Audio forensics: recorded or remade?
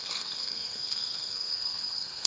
remade